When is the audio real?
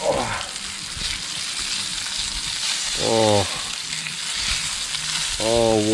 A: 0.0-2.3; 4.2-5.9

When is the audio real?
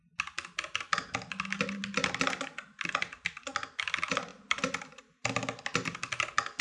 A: 0.0-6.6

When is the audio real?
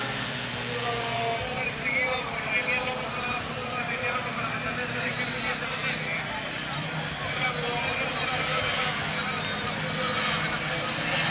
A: 0.0-11.3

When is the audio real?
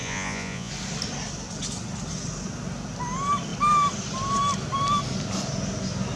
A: 0.7-6.2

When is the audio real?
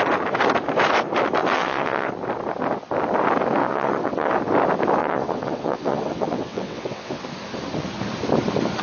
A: 0.0-1.4; 2.1-3.6; 4.3-5.0; 7.2-8.8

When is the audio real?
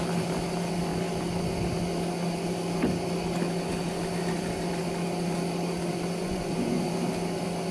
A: 0.0-6.2; 6.9-7.7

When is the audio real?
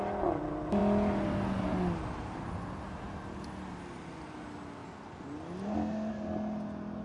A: 0.0-7.0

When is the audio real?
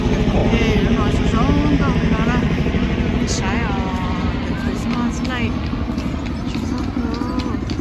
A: 0.0-7.8